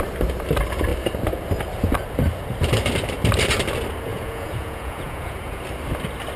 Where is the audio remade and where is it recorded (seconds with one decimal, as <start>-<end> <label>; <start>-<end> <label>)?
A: 0.0-4.1 recorded; 4.1-5.6 remade; 5.6-6.4 recorded